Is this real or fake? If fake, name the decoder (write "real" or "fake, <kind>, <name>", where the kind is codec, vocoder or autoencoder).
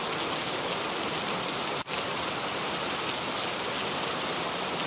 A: real